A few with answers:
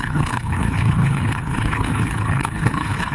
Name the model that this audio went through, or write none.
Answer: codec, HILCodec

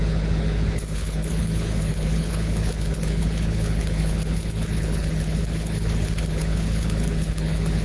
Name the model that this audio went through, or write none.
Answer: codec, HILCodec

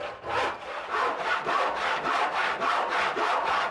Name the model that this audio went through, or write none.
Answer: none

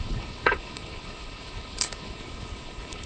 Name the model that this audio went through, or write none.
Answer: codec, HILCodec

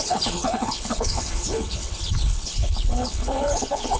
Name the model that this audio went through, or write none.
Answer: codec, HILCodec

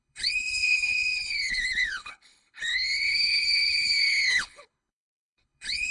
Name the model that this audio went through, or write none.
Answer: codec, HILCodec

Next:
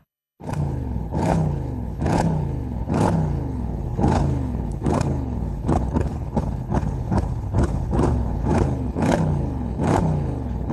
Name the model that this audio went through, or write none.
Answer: codec, HILCodec